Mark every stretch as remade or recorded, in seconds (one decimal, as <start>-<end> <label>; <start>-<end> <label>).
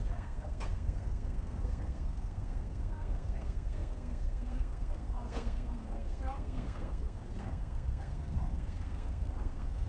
0.0-9.9 remade